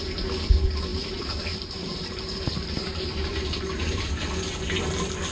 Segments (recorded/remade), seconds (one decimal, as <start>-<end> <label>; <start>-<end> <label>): 0.0-0.9 recorded; 0.9-4.1 remade; 4.1-5.3 recorded